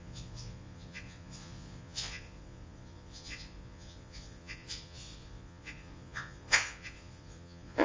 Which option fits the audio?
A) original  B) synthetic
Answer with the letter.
B